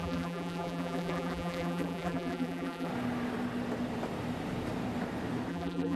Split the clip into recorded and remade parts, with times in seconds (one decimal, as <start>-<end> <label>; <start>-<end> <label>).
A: 0.0-2.9 remade; 2.9-5.5 recorded; 5.5-6.0 remade